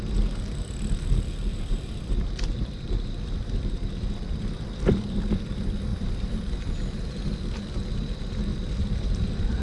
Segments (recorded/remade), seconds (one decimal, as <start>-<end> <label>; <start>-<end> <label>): 0.0-1.5 recorded; 1.5-2.9 remade; 2.9-5.9 recorded; 5.9-6.7 remade; 6.7-8.5 recorded; 8.5-9.6 remade